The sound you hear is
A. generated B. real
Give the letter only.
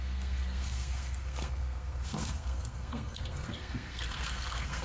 A